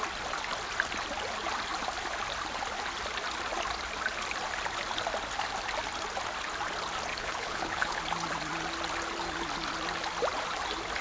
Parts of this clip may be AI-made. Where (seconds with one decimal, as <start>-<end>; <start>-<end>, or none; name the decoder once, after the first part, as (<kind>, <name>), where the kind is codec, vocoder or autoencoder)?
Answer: 7.1-8.0 (codec, HILCodec)